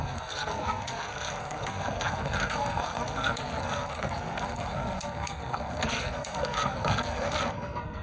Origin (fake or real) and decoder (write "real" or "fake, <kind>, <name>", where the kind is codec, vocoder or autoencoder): fake, codec, SNAC